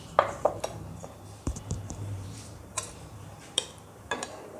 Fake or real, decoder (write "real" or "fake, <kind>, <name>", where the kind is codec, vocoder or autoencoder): fake, vocoder, BigVGAN v2